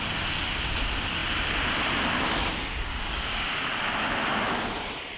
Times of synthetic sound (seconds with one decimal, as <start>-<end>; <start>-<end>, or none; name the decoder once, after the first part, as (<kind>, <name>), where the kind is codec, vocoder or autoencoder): 2.5-3.7 (codec, DAC)